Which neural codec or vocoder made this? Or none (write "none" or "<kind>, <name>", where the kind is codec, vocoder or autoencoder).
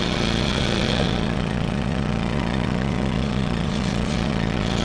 vocoder, Vocos